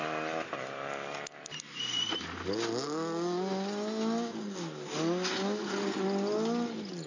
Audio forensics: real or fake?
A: real